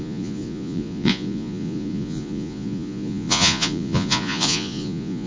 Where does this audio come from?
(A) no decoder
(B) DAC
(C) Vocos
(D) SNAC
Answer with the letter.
C